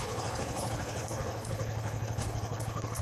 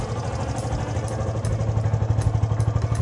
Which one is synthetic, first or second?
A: first